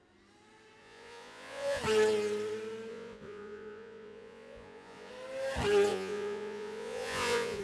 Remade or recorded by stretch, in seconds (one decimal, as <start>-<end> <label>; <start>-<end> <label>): 0.0-0.8 recorded; 0.8-1.8 remade; 1.8-2.9 recorded; 2.9-5.1 remade; 5.1-5.9 recorded; 5.9-7.6 remade